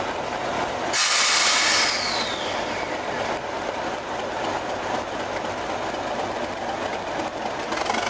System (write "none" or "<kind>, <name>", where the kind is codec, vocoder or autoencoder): none